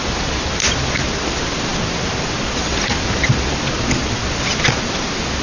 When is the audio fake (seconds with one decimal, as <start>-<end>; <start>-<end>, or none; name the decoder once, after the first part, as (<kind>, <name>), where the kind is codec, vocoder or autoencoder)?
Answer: none

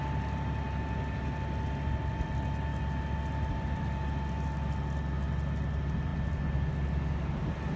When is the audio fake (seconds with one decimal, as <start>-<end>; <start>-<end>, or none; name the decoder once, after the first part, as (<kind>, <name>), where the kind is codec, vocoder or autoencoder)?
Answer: none